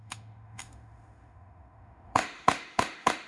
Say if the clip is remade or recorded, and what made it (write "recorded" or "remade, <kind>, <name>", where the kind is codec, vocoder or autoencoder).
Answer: remade, autoencoder, DAC-VAE